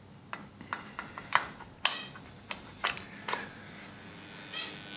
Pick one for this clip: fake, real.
real